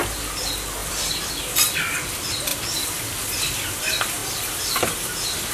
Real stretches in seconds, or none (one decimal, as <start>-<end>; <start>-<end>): 0.0-0.8; 1.4-5.5